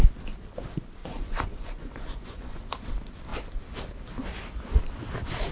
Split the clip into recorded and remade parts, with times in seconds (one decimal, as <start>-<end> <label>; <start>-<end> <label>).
0.0-1.0 recorded; 1.0-2.6 remade; 2.6-5.5 recorded